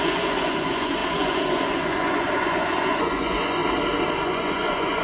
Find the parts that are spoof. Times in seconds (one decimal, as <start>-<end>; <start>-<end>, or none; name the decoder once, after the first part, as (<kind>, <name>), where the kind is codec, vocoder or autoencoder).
0.0-3.6 (vocoder, Vocos); 4.2-5.0

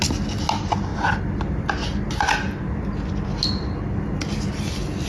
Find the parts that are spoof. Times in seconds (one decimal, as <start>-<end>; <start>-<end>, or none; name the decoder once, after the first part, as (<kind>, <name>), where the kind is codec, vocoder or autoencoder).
none

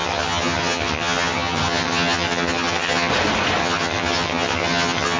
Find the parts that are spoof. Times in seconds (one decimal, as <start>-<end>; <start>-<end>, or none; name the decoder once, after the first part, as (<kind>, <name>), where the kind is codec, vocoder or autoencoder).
0.0-3.1 (vocoder, HiFi-GAN); 3.6-5.2

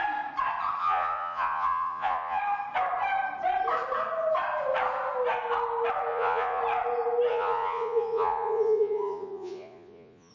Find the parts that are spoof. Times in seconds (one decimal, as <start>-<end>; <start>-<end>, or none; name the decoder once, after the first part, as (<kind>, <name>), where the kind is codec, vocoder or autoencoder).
0.8-2.4 (vocoder, Vocos); 6.1-6.6; 7.3-10.3

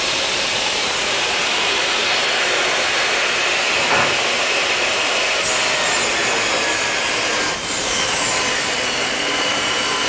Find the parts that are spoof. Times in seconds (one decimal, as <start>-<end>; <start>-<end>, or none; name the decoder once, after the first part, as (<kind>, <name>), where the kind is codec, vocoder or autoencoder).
0.0-2.0 (vocoder, BigVGAN v2); 4.8-5.3; 6.7-10.1

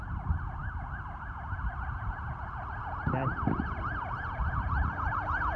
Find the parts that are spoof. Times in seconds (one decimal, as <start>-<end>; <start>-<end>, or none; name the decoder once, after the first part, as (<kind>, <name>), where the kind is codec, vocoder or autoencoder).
none

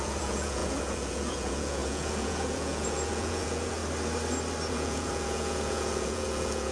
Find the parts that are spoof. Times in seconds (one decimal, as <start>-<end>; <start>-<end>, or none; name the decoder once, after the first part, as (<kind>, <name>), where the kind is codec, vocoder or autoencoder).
0.0-3.8 (vocoder, Vocos); 4.7-6.7

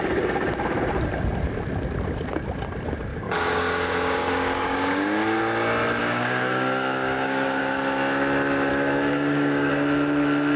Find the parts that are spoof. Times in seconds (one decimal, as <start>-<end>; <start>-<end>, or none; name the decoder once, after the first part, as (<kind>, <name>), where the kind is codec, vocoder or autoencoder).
3.1-5.4 (codec, DAC); 6.0-7.6; 8.7-9.7